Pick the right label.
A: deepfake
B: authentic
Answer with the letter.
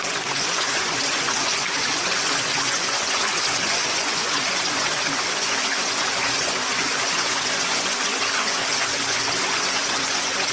A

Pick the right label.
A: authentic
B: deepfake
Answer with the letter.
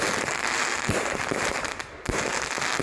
A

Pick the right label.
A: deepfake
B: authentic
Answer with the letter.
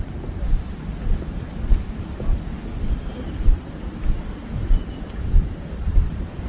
A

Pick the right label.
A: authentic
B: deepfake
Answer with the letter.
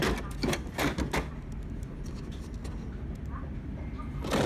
A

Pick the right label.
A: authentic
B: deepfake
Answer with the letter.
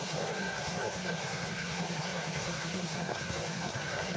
B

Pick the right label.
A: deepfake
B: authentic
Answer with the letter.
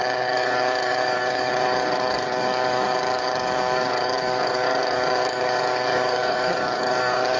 A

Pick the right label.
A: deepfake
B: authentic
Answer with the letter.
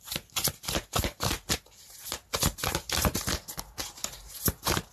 B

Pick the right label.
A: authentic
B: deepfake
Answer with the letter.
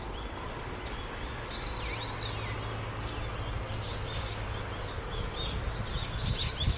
A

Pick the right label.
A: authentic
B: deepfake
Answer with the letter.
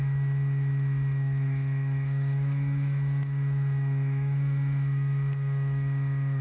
B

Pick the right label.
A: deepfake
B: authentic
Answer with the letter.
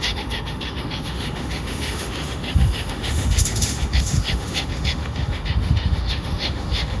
A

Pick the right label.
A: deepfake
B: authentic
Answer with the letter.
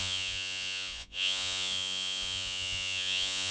A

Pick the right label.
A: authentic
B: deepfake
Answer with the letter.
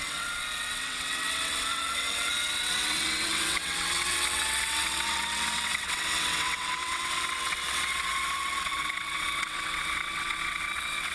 B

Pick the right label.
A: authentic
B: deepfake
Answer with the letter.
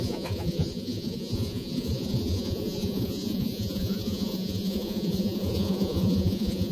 B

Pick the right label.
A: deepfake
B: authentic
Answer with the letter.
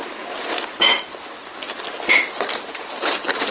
B